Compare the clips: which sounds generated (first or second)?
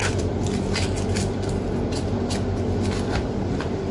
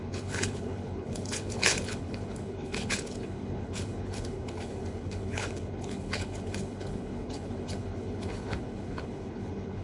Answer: second